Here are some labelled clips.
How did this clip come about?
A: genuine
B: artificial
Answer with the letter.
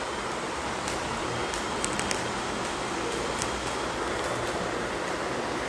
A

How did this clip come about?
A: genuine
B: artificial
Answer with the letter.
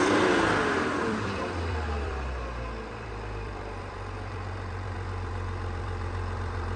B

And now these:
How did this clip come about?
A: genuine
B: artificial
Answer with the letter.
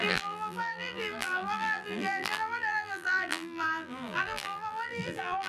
B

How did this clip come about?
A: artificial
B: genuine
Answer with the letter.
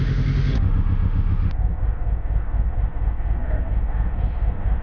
A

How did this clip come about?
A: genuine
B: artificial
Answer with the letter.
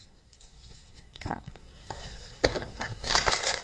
B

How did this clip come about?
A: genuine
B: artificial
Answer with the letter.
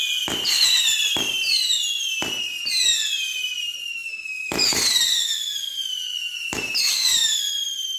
B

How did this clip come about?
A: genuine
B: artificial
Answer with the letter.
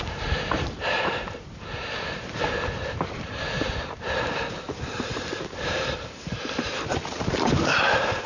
B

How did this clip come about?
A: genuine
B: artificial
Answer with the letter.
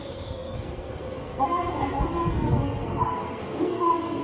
B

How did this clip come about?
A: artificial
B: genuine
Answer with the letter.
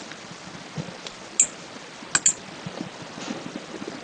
B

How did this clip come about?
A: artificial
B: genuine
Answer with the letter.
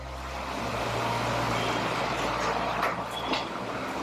B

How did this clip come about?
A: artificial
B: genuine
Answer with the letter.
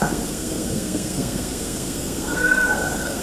A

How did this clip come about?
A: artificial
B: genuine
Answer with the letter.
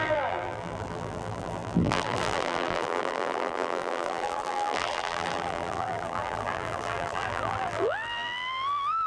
A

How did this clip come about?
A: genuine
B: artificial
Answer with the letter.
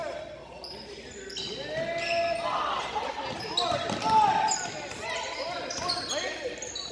A